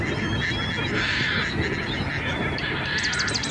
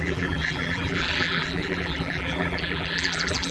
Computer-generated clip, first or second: second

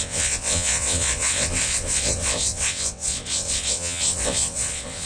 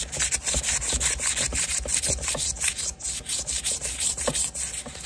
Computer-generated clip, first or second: first